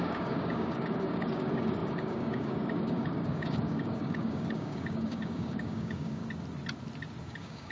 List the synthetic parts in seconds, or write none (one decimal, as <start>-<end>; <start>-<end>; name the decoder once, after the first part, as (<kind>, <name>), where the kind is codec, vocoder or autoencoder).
0.0-6.2 (codec, DAC); 7.2-7.7